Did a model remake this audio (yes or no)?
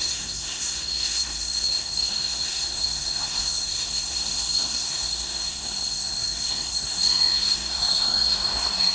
yes